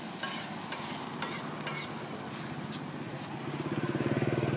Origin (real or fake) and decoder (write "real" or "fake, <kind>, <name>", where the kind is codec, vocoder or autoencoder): real